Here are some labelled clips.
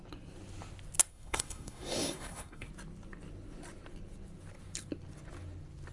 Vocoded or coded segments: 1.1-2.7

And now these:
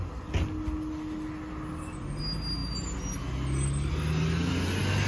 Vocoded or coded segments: none